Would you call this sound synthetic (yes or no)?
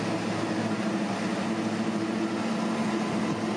no